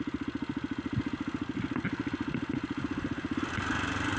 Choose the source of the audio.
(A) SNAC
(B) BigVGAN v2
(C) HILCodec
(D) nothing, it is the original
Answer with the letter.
D